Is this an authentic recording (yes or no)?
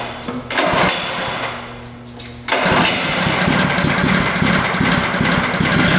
yes